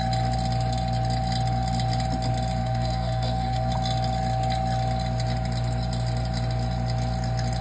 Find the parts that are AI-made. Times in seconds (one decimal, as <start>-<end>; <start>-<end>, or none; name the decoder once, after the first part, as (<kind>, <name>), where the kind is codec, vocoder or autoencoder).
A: 2.6-3.7 (codec, SNAC)